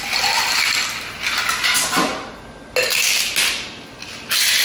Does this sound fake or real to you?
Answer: real